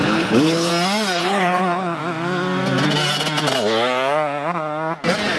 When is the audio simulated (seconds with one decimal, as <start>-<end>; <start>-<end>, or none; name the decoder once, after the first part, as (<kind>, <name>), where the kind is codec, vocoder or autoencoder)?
0.0-0.7 (codec, HILCodec); 1.2-2.0